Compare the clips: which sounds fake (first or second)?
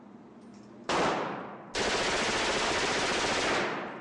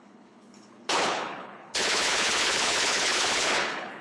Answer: second